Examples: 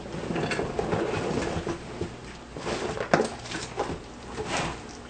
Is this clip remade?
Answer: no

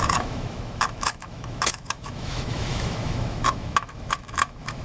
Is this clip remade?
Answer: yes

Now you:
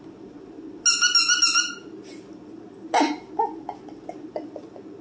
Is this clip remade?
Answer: no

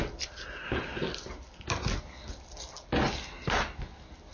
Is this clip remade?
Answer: no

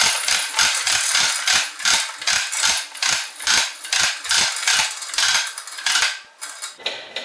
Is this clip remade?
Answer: no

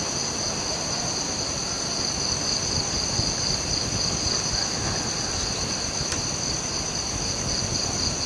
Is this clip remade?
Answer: no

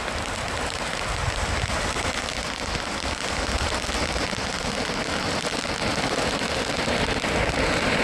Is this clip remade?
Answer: no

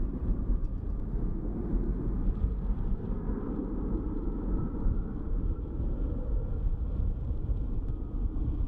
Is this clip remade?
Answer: no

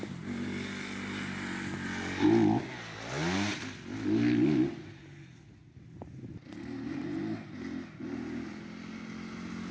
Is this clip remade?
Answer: no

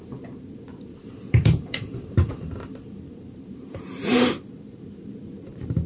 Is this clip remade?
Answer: yes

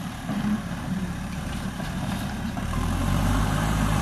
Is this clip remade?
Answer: yes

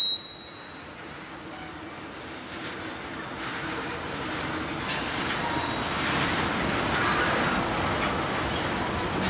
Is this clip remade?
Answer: no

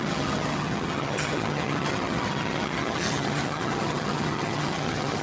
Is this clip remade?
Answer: yes